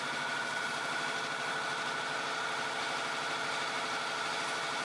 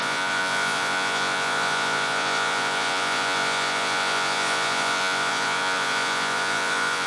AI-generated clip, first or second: second